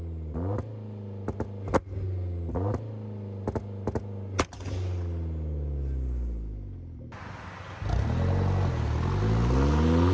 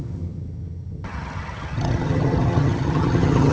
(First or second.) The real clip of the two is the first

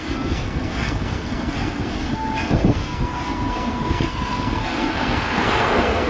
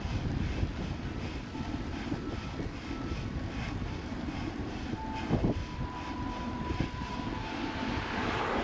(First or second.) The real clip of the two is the second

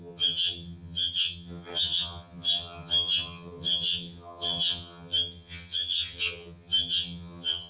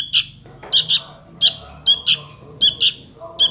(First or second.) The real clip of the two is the second